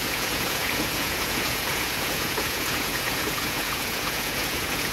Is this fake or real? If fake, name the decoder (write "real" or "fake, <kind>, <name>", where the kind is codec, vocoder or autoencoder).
fake, vocoder, Vocos